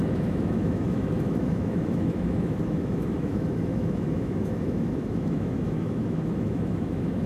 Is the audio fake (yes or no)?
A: yes